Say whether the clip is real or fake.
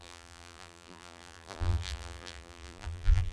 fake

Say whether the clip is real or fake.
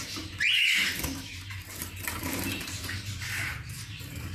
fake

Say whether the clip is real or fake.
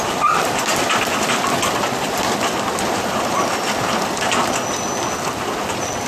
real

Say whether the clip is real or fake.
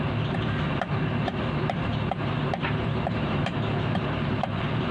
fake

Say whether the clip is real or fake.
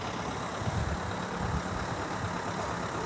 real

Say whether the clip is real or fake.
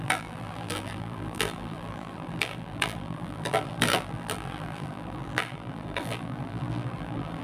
fake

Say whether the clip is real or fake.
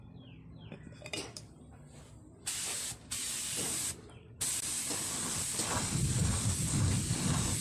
real